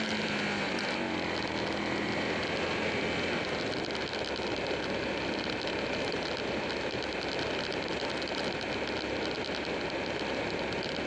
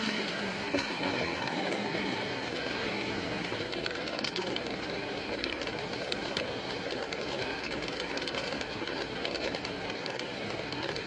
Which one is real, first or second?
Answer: first